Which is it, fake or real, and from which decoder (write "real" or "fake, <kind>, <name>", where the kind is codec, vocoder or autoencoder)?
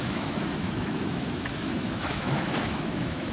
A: fake, autoencoder, DAC-VAE